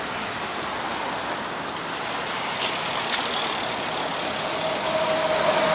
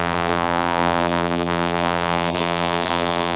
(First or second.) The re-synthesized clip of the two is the second